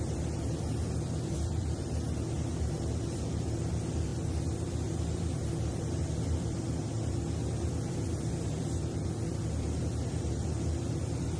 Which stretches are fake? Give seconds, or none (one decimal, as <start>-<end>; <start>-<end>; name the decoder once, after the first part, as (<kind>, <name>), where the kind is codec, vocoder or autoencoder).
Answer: 0.0-11.4 (vocoder, BigVGAN v2)